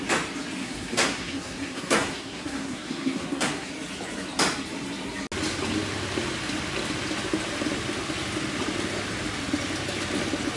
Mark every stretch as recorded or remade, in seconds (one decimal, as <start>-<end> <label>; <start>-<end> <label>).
0.0-0.6 recorded; 0.6-3.7 remade; 3.7-10.6 recorded